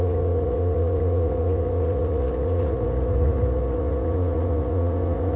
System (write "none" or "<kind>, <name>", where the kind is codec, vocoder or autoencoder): vocoder, Vocos